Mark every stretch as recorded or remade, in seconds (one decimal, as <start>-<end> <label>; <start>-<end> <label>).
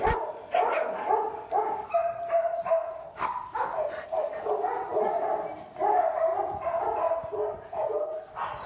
0.0-2.0 recorded; 2.0-3.0 remade; 3.0-6.3 recorded; 6.3-6.8 remade; 6.8-8.7 recorded